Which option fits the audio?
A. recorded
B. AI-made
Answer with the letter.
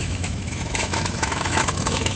B